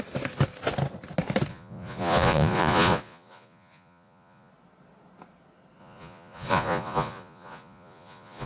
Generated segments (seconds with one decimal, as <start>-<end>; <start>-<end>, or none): 1.5-4.5; 5.8-8.5